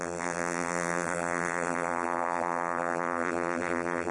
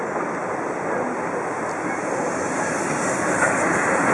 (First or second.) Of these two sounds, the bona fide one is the second